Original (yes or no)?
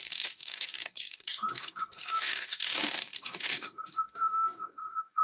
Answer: no